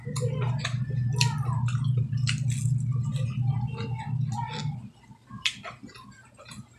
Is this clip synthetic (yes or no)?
no